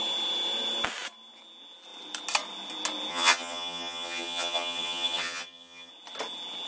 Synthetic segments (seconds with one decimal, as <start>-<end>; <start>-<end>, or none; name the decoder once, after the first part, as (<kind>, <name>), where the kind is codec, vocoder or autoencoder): 3.1-5.9 (vocoder, HiFi-GAN)